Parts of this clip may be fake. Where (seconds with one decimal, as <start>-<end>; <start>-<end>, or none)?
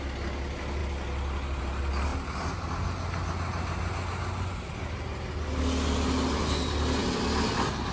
none